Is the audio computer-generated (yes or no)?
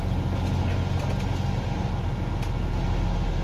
no